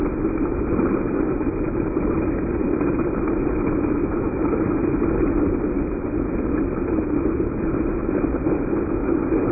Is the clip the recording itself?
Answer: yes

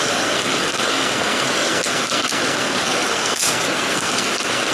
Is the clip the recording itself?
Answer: no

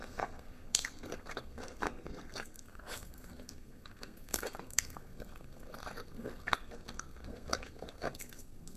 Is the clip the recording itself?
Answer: no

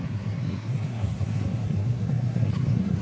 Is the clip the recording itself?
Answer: no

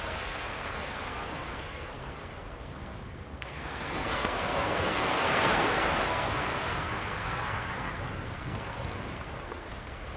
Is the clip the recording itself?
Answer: no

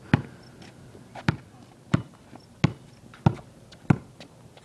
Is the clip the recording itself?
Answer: yes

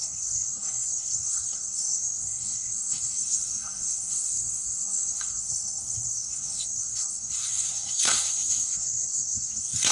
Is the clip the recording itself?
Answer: no